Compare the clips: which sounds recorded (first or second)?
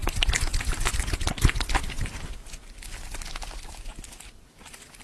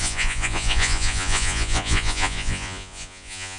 first